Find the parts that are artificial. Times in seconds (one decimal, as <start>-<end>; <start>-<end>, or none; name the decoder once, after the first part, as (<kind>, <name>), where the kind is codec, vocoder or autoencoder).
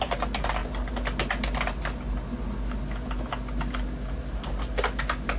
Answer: none